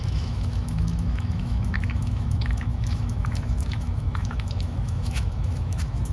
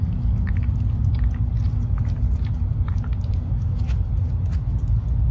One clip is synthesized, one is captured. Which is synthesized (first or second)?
first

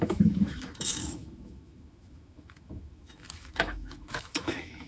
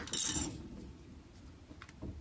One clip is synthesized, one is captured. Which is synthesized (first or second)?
first